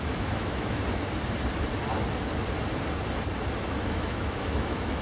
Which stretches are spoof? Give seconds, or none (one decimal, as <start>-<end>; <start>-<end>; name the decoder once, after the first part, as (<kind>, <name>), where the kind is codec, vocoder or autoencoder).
0.0-0.8 (autoencoder, DAC-VAE); 3.8-5.0